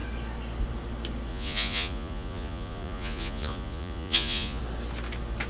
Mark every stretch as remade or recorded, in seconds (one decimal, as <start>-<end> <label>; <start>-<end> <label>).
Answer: 0.0-1.3 recorded; 1.3-4.6 remade; 4.6-5.5 recorded